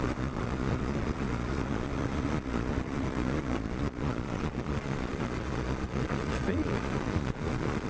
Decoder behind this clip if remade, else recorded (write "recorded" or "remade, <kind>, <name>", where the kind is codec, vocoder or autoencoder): remade, vocoder, Vocos